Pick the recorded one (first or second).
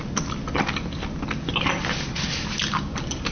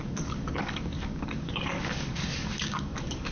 first